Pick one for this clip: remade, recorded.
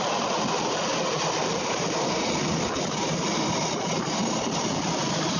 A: recorded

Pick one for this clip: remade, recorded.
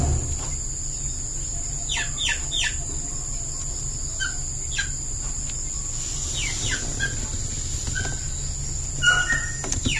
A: recorded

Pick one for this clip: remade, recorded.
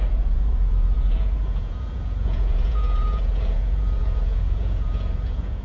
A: remade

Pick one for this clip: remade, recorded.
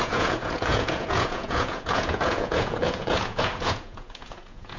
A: remade